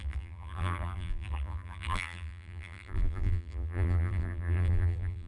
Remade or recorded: remade